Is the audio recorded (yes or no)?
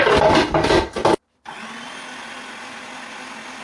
yes